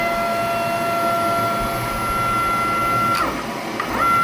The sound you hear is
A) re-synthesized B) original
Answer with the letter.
B